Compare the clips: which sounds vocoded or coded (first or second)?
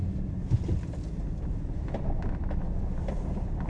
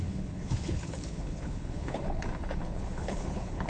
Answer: second